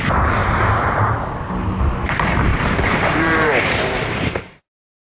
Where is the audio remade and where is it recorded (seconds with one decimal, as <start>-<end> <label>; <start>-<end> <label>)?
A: 0.0-0.4 recorded; 0.4-1.1 remade; 1.1-2.5 recorded; 2.5-4.4 remade; 4.4-5.1 recorded